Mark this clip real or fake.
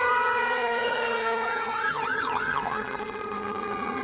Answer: fake